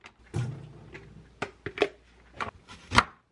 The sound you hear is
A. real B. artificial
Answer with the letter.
A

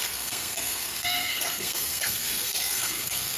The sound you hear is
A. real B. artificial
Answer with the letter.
B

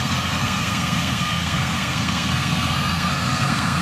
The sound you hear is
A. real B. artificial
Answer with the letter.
B